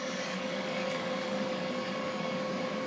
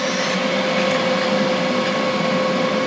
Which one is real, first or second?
second